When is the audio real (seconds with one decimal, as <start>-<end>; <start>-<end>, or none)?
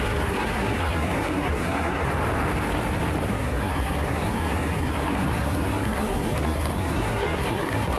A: 2.1-3.3